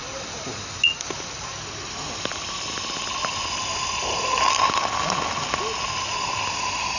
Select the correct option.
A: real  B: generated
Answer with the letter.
A